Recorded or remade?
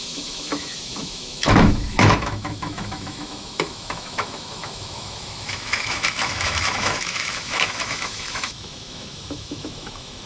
remade